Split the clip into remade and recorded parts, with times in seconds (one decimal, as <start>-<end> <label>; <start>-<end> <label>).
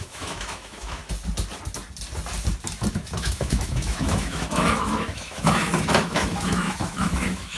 0.0-1.0 remade; 1.0-2.9 recorded; 2.9-7.6 remade